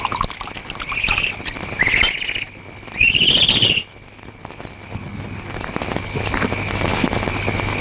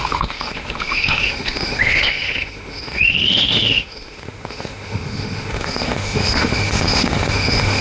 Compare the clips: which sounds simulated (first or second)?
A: second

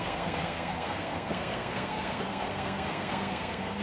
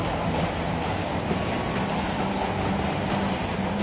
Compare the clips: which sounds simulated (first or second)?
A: first